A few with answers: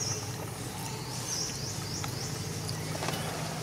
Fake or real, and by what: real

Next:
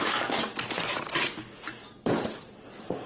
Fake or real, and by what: real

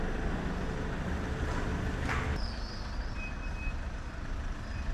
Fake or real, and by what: real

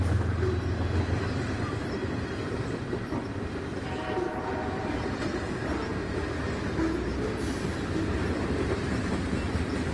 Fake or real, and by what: real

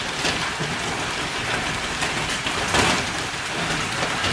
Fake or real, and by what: real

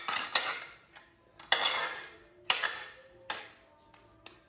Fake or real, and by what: real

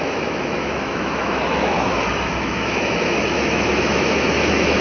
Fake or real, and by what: fake, autoencoder, DAC-VAE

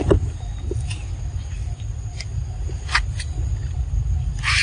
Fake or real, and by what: real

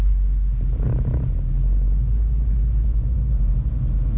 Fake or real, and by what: real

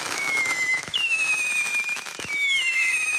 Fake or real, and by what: fake, autoencoder, DAC-VAE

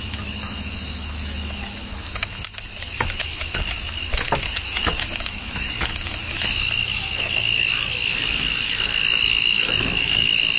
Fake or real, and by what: fake, autoencoder, DAC-VAE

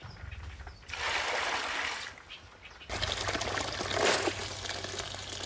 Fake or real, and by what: real